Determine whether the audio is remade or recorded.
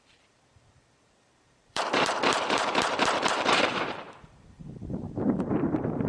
remade